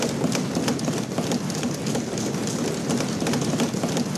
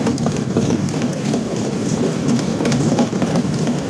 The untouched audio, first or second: first